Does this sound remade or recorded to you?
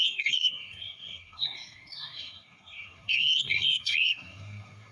remade